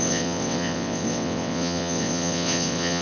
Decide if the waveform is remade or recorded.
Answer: remade